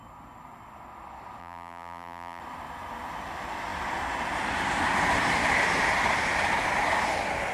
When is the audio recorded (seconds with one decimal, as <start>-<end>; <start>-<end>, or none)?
0.0-1.4; 2.4-7.5